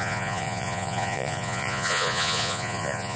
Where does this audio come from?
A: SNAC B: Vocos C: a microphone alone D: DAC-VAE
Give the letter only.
B